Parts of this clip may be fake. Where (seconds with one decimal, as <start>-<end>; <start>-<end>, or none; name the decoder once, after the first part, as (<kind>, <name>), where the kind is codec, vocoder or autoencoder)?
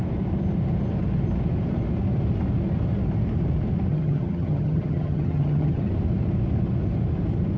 3.9-5.9 (vocoder, HiFi-GAN)